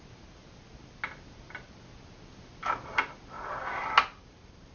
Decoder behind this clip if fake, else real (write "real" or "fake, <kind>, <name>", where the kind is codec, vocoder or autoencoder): real